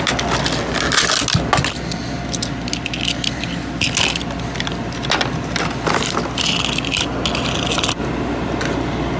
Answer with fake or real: real